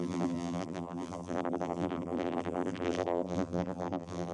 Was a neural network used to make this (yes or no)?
yes